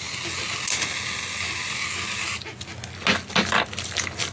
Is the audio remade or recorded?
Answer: recorded